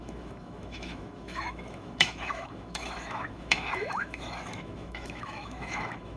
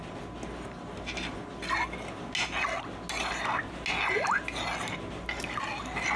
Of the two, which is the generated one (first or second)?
first